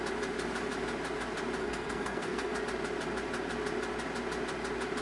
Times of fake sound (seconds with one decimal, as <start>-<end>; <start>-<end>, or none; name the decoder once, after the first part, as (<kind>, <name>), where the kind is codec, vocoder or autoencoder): 1.6-2.6 (codec, SNAC)